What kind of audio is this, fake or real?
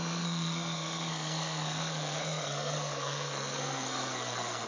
fake